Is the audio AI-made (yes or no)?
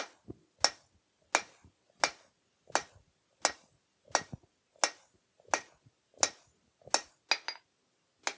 no